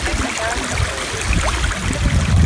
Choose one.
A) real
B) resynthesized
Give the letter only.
A